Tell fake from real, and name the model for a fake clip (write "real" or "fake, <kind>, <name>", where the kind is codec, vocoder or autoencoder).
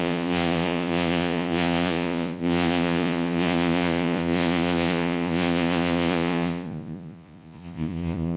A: fake, vocoder, Vocos